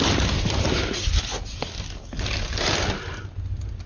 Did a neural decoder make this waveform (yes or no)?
no